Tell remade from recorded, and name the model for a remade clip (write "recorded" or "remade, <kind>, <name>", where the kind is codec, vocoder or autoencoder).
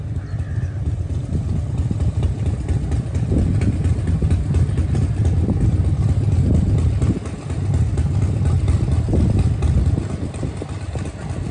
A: recorded